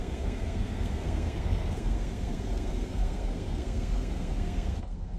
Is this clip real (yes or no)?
no